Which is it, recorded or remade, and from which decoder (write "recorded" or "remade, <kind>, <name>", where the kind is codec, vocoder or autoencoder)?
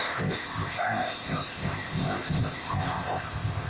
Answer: remade, codec, ZipCodec